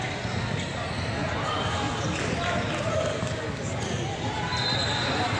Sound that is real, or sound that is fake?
real